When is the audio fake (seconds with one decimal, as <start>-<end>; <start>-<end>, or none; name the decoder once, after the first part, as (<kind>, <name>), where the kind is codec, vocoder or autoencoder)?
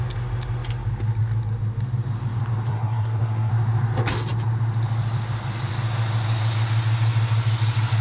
2.7-3.5 (codec, SNAC)